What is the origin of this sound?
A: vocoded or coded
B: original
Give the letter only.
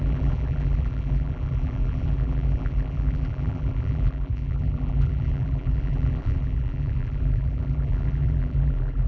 A